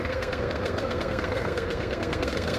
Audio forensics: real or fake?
fake